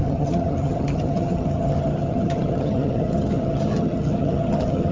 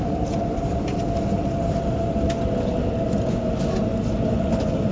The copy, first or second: first